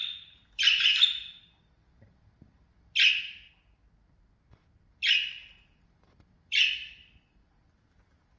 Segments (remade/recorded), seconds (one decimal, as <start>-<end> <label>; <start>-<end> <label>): 0.0-8.4 recorded